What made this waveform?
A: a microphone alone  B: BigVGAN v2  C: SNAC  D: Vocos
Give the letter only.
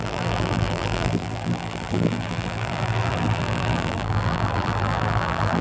B